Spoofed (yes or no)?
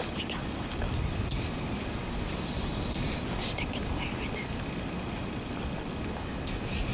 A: no